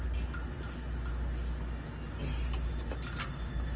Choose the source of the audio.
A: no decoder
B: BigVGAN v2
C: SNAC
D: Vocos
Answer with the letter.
A